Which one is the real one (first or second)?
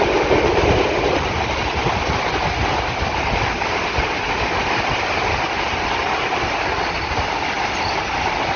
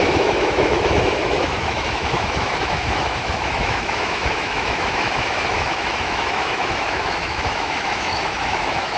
first